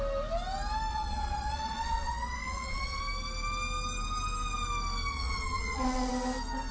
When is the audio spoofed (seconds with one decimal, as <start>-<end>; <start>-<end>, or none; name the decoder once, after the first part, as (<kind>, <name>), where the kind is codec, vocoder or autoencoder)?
0.9-3.0 (vocoder, Vocos); 5.1-6.1